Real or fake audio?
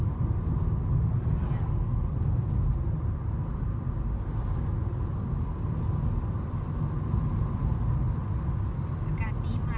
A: real